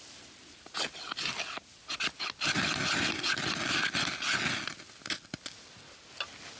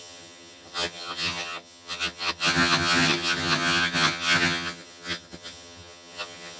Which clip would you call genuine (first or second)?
first